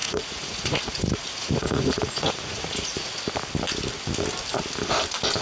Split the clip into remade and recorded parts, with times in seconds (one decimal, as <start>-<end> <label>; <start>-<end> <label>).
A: 0.0-3.2 remade; 3.2-5.4 recorded